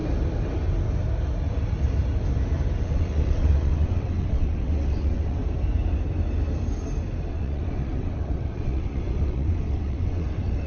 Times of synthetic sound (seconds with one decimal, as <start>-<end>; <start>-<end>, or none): 2.8-5.4; 7.3-10.7